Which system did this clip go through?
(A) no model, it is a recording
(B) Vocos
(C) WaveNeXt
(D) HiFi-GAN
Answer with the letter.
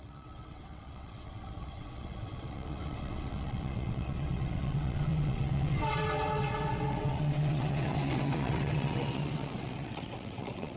C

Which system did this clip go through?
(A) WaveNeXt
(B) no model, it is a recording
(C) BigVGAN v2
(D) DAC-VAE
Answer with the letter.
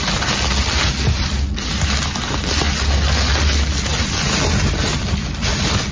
B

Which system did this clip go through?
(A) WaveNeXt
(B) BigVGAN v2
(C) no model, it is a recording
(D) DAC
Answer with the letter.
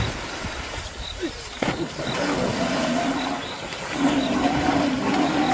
C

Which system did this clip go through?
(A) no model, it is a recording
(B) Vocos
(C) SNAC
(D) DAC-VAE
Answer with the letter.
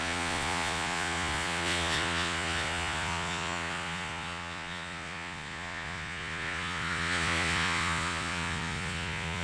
B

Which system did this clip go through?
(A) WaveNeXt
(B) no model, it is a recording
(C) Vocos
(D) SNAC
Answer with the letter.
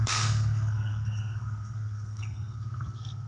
D